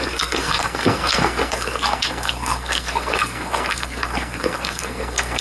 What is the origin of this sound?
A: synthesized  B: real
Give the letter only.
A